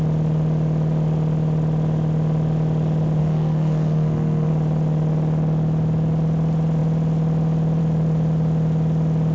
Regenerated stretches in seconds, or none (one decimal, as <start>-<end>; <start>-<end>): 3.2-4.5